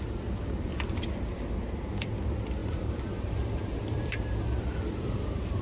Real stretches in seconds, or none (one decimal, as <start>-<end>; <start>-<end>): 0.0-0.7; 1.4-2.6